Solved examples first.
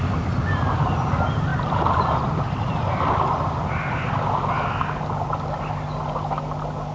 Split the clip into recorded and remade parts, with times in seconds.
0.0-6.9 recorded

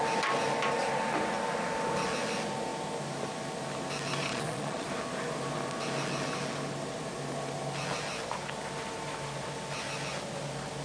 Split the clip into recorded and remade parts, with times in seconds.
0.0-4.3 recorded; 4.3-4.9 remade; 4.9-10.8 recorded